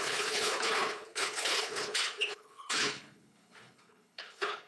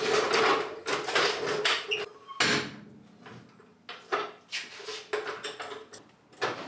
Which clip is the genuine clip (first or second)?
second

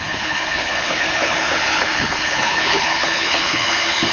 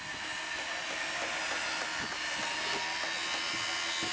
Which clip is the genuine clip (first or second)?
second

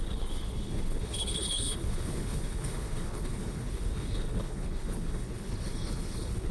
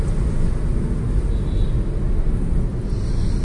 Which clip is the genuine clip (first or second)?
second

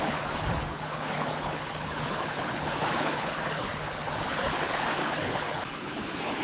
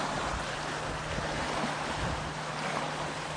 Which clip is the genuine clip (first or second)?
second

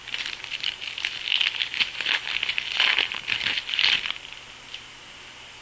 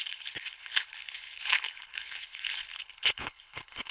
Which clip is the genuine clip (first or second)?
first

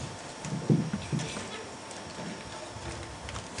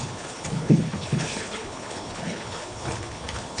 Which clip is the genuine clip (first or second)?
first